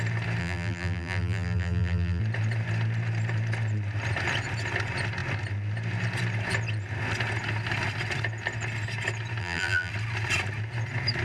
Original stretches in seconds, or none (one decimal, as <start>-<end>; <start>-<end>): 0.0-0.4; 2.2-9.4; 9.9-11.2